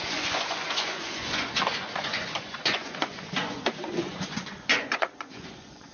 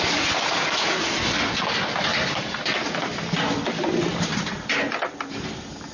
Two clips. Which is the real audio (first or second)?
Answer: second